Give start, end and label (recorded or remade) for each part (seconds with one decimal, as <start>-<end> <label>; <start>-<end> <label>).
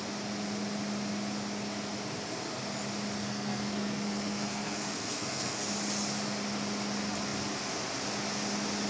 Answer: 0.0-3.2 recorded; 3.2-5.7 remade; 5.7-8.9 recorded